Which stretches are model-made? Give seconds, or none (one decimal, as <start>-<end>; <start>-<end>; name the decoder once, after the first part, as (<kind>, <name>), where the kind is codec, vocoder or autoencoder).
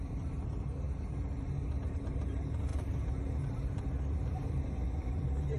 0.0-5.6 (vocoder, BigVGAN v2)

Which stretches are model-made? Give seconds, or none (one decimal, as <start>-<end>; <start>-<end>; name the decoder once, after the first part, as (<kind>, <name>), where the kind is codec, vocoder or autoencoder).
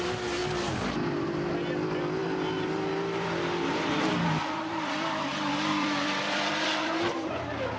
2.2-6.9 (vocoder, BigVGAN v2)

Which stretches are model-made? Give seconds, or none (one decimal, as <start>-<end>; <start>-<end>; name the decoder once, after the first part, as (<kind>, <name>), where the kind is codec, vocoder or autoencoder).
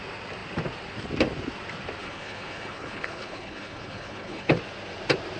2.0-4.5 (codec, HILCodec)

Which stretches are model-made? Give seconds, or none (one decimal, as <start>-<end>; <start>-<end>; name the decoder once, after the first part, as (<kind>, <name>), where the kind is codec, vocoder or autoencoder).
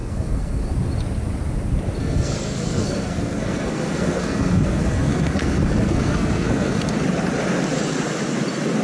0.0-0.6 (codec, SNAC); 2.0-6.9